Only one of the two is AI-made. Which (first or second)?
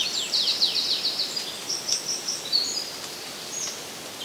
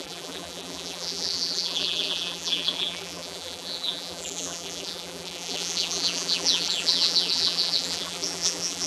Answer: second